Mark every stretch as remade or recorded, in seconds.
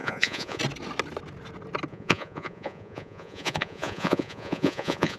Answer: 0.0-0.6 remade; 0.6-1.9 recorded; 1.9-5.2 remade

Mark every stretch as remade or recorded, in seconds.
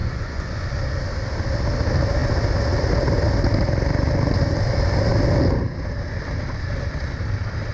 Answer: 0.0-0.7 remade; 0.7-7.7 recorded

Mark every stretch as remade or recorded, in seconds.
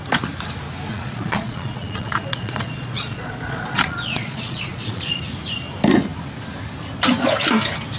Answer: 0.0-0.9 recorded; 0.9-5.2 remade; 5.2-8.0 recorded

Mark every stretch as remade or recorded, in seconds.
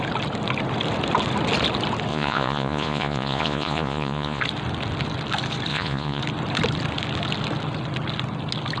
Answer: 0.0-2.1 recorded; 2.1-4.4 remade; 4.4-5.7 recorded; 5.7-6.2 remade; 6.2-8.8 recorded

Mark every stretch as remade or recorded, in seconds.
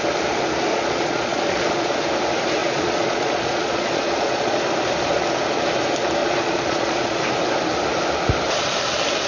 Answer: 0.0-0.7 recorded; 0.7-2.0 remade; 2.0-2.6 recorded; 2.6-4.6 remade; 4.6-6.2 recorded; 6.2-7.2 remade; 7.2-9.3 recorded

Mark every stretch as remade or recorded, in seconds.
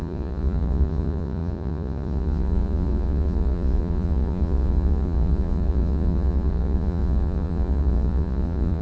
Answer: 0.0-8.8 remade